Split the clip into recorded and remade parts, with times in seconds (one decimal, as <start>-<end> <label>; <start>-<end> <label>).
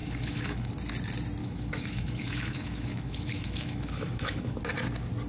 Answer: 0.0-0.7 remade; 0.7-1.4 recorded; 1.4-4.6 remade; 4.6-5.3 recorded